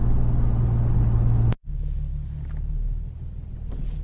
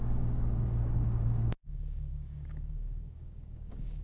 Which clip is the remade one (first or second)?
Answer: second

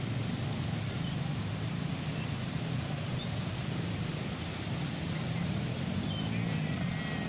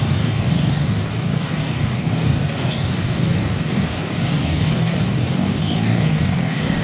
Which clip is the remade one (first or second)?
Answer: second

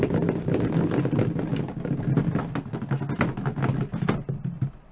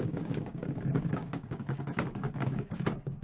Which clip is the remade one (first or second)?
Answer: second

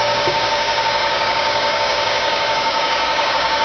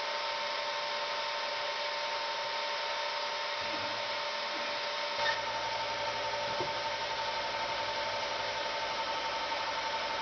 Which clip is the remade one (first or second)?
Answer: first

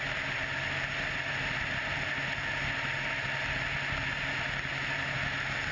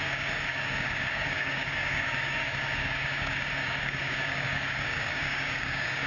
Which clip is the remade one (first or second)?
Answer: second